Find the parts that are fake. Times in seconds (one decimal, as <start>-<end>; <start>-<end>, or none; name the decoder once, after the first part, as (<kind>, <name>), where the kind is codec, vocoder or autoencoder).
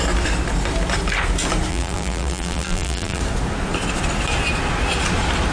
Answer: 1.7-3.2 (vocoder, BigVGAN v2)